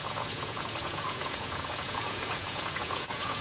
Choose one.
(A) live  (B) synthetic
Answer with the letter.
B